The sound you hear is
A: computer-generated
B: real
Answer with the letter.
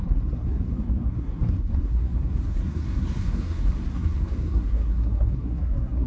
A